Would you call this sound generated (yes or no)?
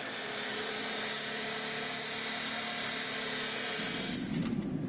no